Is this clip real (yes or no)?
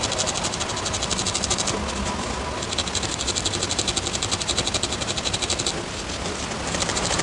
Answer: yes